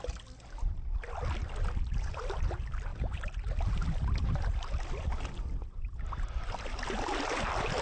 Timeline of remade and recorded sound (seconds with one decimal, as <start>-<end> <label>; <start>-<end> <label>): 0.0-7.8 recorded